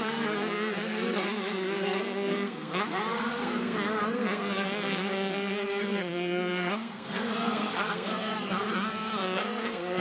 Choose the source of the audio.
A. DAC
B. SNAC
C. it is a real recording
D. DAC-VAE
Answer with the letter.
B